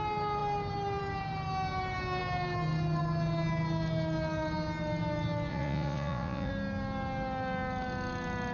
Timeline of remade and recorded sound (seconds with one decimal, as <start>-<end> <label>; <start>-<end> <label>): 0.0-5.5 recorded; 5.5-6.5 remade; 6.5-8.5 recorded